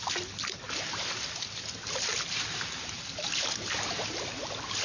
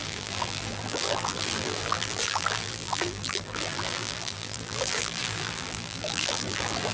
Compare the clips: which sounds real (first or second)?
first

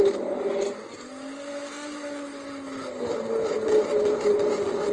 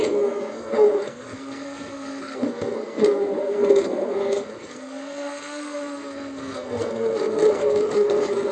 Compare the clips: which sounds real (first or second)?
first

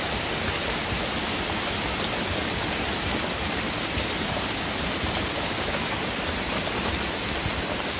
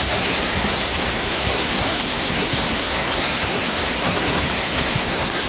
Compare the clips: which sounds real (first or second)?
first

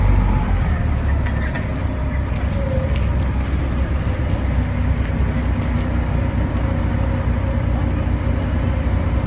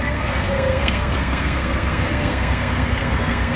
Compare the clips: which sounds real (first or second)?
first